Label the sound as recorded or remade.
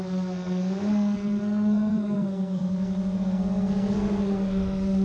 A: remade